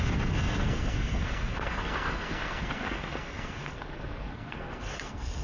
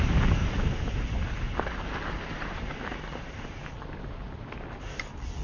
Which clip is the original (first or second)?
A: second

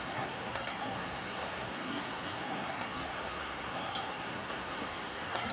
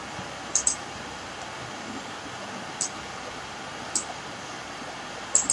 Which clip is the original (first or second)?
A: second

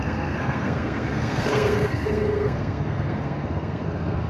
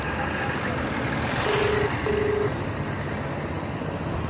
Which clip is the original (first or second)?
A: second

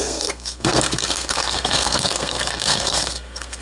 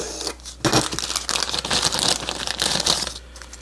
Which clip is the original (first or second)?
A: second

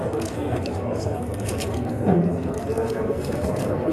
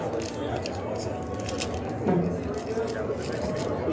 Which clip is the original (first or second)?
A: second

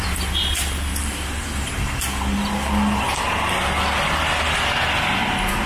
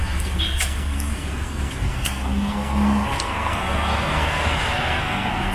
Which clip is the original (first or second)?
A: first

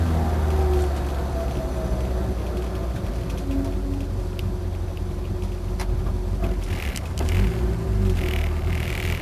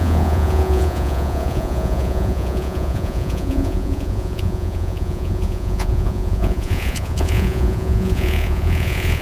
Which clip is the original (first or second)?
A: first